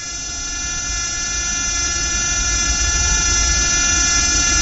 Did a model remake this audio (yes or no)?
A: no